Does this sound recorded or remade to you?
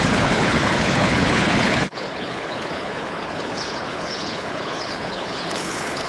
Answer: remade